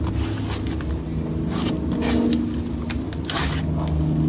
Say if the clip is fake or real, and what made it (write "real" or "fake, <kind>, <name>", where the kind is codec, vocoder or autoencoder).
real